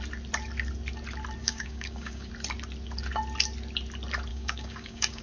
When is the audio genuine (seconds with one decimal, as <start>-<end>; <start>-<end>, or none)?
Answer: 0.0-1.4; 2.3-4.3